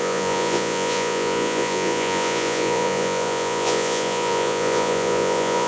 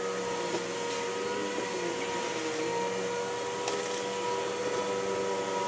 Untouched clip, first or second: second